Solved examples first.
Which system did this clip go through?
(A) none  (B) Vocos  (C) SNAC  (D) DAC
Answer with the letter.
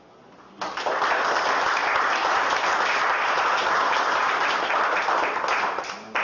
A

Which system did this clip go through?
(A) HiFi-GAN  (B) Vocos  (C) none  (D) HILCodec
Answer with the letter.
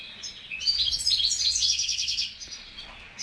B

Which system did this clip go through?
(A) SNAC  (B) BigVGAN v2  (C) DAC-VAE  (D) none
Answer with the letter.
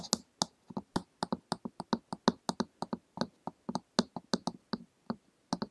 D